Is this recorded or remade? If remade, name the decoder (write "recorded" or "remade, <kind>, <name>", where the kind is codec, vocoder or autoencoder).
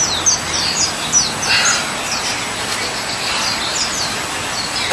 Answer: recorded